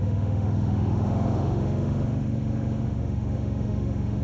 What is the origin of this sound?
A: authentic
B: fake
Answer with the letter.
B